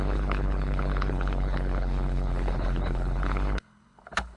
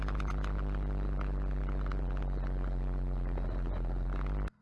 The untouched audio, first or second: second